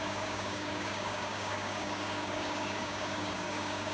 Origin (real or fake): fake